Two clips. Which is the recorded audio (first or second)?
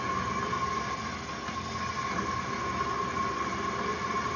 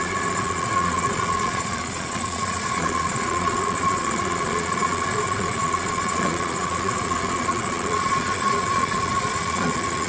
first